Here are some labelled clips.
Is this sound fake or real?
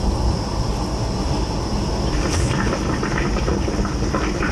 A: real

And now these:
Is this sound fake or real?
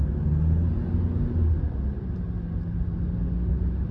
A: real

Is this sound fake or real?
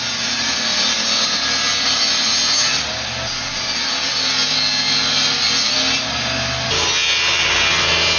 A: real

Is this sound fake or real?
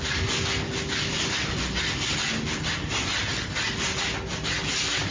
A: real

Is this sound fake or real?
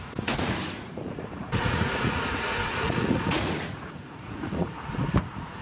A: fake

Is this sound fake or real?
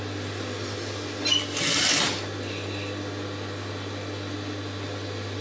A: real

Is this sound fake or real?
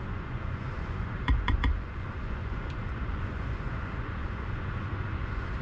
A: fake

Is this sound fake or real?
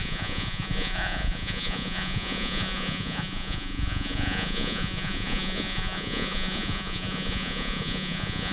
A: fake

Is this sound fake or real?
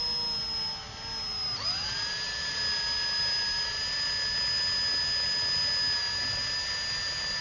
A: real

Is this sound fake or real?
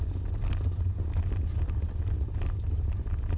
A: real